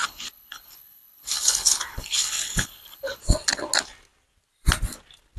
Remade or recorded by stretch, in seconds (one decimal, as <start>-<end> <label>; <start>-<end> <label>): 0.0-3.2 remade; 3.2-5.4 recorded

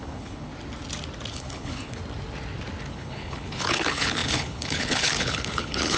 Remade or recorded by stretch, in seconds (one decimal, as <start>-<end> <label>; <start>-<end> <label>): 0.0-0.5 remade; 0.5-1.3 recorded; 1.3-2.0 remade; 2.0-2.9 recorded; 2.9-6.0 remade

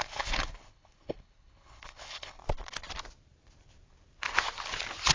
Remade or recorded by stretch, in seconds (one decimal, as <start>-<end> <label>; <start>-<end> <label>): 0.0-2.4 remade; 2.4-5.1 recorded

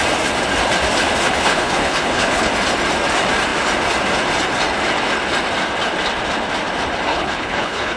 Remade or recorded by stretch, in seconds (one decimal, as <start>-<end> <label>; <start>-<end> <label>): 0.0-1.2 recorded; 1.2-2.5 remade; 2.5-7.1 recorded; 7.1-8.0 remade